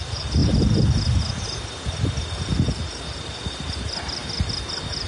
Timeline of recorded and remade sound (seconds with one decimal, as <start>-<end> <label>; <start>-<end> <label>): 0.0-5.1 recorded